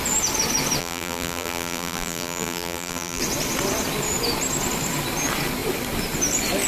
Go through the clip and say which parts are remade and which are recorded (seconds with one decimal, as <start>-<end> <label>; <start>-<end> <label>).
0.0-0.8 recorded; 0.8-3.2 remade; 3.2-6.7 recorded